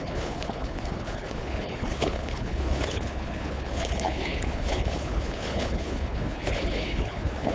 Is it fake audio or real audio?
fake